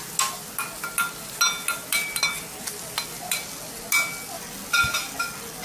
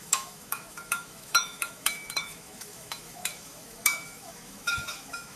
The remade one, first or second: second